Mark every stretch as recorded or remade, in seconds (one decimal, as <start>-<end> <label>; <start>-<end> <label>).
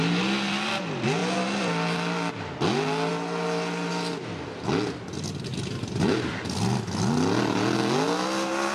0.0-1.2 recorded; 1.2-2.3 remade; 2.3-5.5 recorded; 5.5-6.3 remade; 6.3-8.7 recorded